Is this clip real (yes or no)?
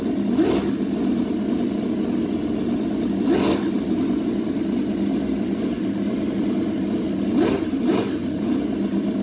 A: yes